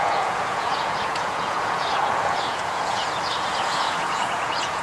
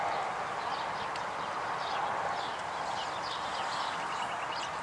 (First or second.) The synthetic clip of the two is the first